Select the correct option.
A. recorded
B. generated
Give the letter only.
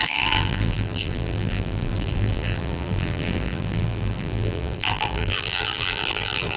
B